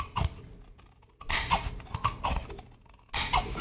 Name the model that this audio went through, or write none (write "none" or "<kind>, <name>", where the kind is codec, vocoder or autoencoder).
none